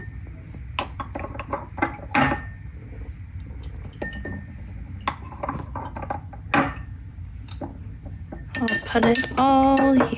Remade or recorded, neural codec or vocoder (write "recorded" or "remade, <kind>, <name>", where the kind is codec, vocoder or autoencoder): recorded